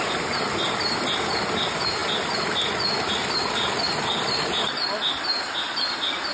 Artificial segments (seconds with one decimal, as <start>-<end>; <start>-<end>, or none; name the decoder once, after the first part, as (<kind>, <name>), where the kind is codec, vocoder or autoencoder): none

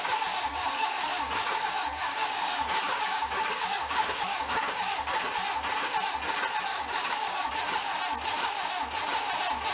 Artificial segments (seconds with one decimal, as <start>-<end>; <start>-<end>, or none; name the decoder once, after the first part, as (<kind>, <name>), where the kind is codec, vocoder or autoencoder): 0.5-5.2 (codec, DAC); 6.7-7.5

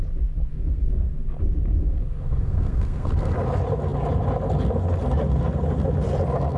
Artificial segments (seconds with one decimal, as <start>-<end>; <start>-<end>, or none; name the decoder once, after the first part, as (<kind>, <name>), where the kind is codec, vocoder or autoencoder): 0.5-1.1 (codec, SNAC); 1.8-3.3

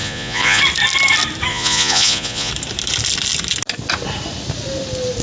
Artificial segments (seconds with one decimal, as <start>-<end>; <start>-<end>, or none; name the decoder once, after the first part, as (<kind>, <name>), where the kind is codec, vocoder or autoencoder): 0.0-0.6 (vocoder, Vocos); 1.5-2.5

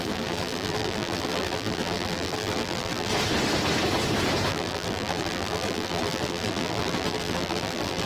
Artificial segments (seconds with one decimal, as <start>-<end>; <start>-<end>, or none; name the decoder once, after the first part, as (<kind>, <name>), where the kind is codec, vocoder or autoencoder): 0.0-3.1 (vocoder, BigVGAN v2); 4.5-8.1

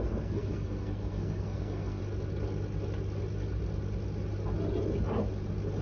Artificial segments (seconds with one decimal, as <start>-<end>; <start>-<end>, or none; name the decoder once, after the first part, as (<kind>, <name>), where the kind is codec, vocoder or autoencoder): 0.0-2.0 (codec, SNAC)

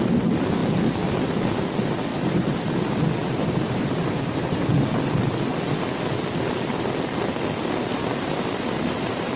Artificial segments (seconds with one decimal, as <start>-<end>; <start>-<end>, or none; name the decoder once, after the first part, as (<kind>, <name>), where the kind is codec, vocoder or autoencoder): 2.1-2.6 (vocoder, BigVGAN v2); 3.2-4.6; 7.9-9.4